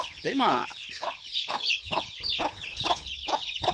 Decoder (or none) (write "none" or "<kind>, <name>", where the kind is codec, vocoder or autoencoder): codec, HILCodec